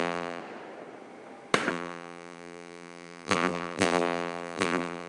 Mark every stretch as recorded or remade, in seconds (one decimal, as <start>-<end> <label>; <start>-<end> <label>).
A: 0.0-0.4 remade; 0.4-1.7 recorded; 1.7-5.1 remade